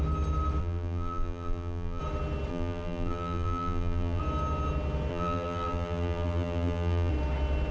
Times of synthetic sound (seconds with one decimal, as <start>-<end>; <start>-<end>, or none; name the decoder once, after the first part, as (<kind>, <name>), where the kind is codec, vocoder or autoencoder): 0.6-2.0 (vocoder, BigVGAN v2); 2.5-4.2; 5.1-7.1